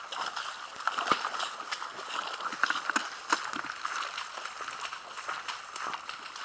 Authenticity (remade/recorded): recorded